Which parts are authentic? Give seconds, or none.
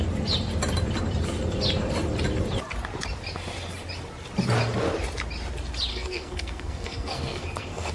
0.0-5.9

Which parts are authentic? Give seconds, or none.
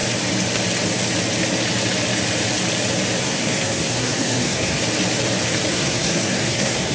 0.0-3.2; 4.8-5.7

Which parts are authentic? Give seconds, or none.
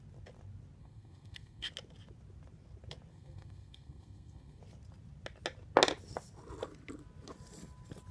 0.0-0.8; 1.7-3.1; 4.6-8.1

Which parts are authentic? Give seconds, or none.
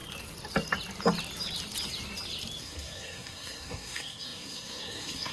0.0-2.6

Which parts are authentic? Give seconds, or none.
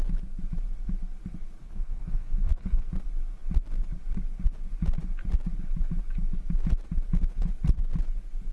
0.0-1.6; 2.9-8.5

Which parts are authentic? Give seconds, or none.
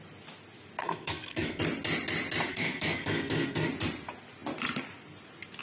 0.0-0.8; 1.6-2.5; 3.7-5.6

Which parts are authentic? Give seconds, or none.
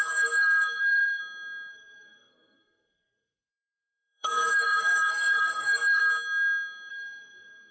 1.2-1.7; 6.0-6.9